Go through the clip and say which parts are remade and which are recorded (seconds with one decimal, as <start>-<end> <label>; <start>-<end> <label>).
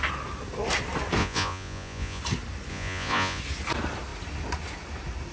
0.0-1.2 recorded; 1.2-2.2 remade; 2.2-2.7 recorded; 2.7-3.4 remade; 3.4-5.3 recorded